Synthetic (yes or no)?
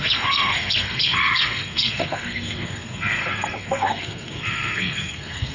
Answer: yes